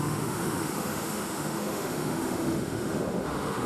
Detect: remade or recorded remade